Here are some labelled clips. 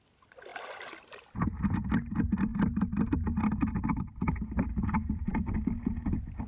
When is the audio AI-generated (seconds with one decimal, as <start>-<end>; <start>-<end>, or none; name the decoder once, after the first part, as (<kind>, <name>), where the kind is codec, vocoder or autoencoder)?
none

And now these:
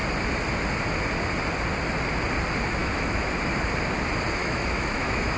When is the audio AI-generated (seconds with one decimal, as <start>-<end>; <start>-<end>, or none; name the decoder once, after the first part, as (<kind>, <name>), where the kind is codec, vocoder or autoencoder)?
2.8-3.5 (autoencoder, DAC-VAE); 4.4-5.4

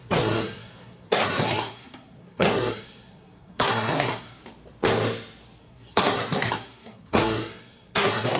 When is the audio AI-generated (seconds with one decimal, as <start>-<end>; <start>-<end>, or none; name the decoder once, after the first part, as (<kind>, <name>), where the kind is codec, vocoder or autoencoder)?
0.0-4.4 (codec, SNAC); 5.6-8.4

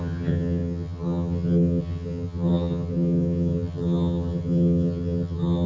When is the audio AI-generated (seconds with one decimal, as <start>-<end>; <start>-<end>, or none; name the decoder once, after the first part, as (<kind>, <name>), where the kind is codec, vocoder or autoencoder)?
0.0-5.7 (vocoder, HiFi-GAN)

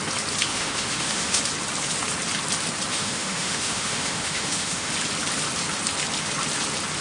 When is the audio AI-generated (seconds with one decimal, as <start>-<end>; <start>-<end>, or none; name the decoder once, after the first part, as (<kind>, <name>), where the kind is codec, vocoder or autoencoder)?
0.5-1.4 (autoencoder, DAC-VAE); 2.9-4.9

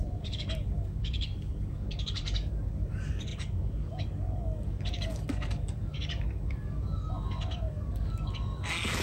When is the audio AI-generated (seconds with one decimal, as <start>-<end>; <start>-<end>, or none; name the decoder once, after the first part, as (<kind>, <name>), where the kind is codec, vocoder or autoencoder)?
0.0-9.0 (codec, DAC)